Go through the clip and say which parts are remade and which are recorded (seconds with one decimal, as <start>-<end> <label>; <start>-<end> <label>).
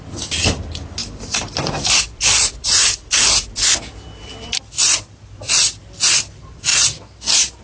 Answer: 0.0-1.0 recorded; 1.0-2.8 remade; 2.8-6.7 recorded; 6.7-7.6 remade